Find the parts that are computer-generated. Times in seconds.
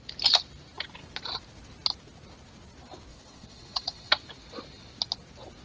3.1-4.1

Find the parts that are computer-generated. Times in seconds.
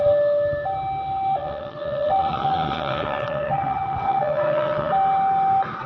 1.4-4.9